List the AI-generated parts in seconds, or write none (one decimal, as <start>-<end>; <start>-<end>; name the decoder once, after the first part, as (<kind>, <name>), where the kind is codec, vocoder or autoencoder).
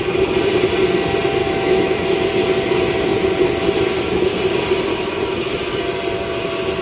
1.4-2.0 (autoencoder, DAC-VAE); 4.9-5.8